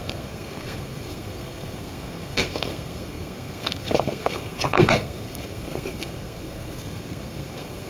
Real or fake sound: fake